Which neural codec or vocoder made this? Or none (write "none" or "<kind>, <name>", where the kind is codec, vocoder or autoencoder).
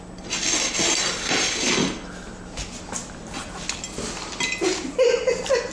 none